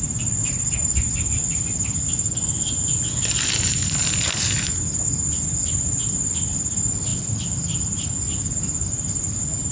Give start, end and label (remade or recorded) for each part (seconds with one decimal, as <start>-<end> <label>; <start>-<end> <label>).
0.0-9.7 recorded